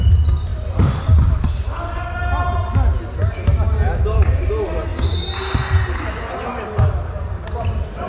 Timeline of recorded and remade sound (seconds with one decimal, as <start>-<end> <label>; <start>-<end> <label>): 0.0-8.1 recorded